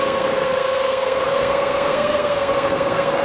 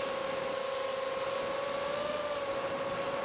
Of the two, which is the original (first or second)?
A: second